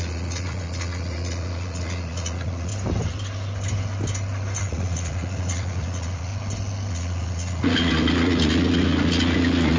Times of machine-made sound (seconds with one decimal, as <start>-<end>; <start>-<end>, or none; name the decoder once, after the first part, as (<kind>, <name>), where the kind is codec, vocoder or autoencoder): 0.0-2.7 (vocoder, Vocos); 4.6-6.3; 6.9-9.8

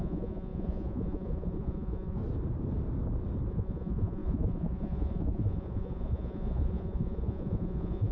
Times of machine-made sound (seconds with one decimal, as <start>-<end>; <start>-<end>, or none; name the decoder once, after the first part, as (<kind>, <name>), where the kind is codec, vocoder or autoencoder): 0.0-2.2 (vocoder, Vocos); 3.5-8.1

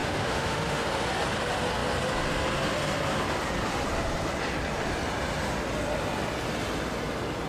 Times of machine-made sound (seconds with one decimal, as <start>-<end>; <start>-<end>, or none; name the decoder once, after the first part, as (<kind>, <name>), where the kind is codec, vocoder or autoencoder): 0.0-0.9 (autoencoder, DAC-VAE)

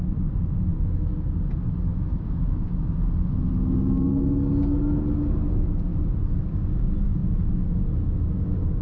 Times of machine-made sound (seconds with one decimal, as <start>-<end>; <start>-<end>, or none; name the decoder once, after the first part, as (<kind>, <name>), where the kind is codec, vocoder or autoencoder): 1.9-2.7 (autoencoder, DAC-VAE)

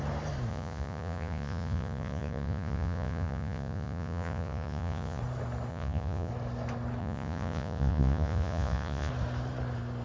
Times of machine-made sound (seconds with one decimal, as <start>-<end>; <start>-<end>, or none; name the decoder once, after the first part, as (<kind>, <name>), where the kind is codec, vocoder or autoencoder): 0.5-5.2 (vocoder, Vocos); 5.7-6.3; 7.0-9.1

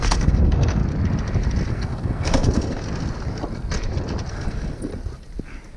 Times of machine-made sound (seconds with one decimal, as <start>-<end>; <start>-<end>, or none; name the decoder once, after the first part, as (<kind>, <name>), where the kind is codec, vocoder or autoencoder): 0.0-0.8 (codec, SNAC); 1.7-2.8; 4.3-4.9